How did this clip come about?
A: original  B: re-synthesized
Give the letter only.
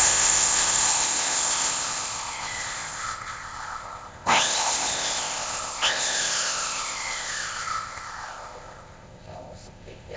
B